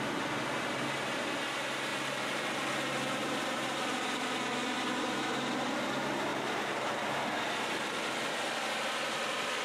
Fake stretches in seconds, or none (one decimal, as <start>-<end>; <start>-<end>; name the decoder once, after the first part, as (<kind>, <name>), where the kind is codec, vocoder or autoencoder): 1.9-2.7 (vocoder, BigVGAN v2); 3.2-3.8; 6.3-7.0